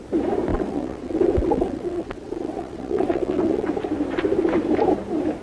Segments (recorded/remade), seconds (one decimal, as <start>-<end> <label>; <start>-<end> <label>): 0.0-0.5 recorded; 0.5-3.7 remade; 3.7-5.4 recorded